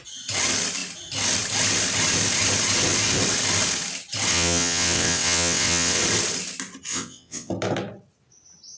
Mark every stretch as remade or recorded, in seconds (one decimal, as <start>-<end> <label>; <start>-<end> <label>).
0.0-4.3 recorded; 4.3-6.0 remade; 6.0-6.9 recorded; 6.9-7.5 remade; 7.5-8.8 recorded

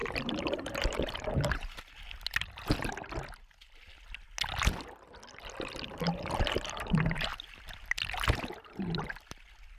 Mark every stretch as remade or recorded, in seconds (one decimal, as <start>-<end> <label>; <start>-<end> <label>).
0.0-1.9 remade; 1.9-9.8 recorded

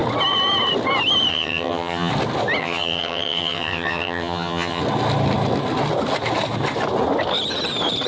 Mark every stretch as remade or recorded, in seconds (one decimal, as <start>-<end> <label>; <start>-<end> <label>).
0.0-1.3 recorded; 1.3-2.1 remade; 2.1-2.6 recorded; 2.6-4.8 remade; 4.8-8.1 recorded

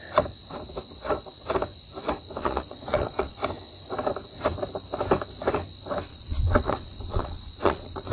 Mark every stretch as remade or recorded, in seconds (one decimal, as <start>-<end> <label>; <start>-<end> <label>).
0.0-2.4 recorded; 2.4-3.4 remade; 3.4-6.1 recorded; 6.1-8.1 remade